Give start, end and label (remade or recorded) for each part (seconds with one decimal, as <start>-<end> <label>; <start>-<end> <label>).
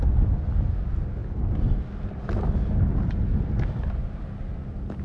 0.0-2.9 recorded; 2.9-4.2 remade; 4.2-5.0 recorded